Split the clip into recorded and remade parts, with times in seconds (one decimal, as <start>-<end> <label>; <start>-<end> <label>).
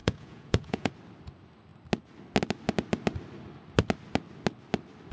0.0-0.9 remade; 0.9-5.1 recorded